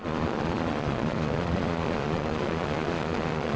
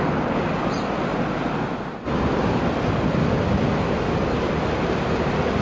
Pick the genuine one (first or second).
second